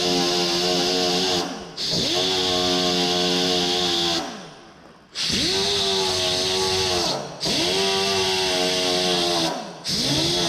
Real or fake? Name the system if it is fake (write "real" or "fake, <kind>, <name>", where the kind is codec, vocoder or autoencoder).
real